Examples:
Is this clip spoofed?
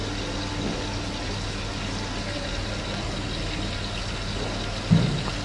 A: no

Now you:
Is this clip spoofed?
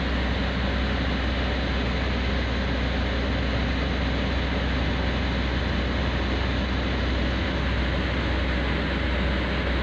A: no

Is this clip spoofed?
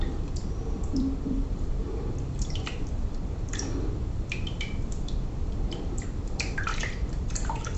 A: yes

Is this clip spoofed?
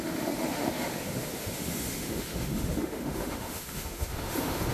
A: yes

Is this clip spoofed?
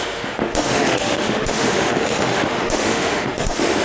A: yes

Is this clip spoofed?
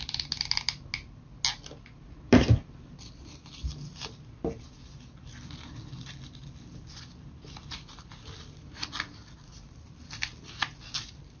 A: no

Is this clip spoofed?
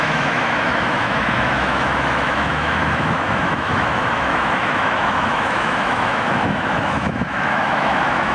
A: yes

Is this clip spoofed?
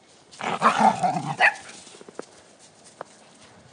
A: no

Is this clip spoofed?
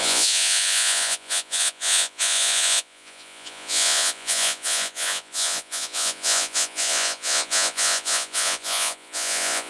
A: yes